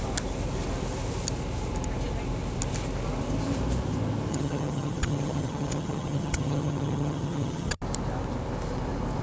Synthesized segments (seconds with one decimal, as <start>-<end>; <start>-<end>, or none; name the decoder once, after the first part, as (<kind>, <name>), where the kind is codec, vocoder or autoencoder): 4.3-7.8 (vocoder, HiFi-GAN)